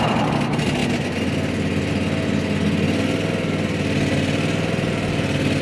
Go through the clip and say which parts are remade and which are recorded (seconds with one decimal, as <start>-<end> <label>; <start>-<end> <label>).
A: 0.0-5.6 recorded